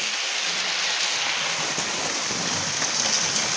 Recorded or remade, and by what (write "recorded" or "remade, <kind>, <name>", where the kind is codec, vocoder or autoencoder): recorded